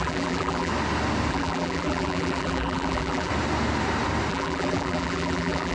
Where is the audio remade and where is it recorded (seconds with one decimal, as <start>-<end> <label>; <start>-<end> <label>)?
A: 0.0-0.7 remade; 0.7-1.3 recorded; 1.3-3.3 remade; 3.3-4.3 recorded; 4.3-5.7 remade